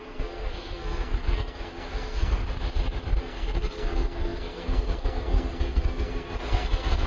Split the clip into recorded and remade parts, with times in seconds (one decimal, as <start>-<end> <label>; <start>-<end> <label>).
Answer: 0.0-2.4 remade; 2.4-3.2 recorded; 3.2-7.1 remade